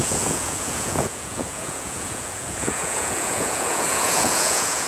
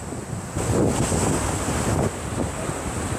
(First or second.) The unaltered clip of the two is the second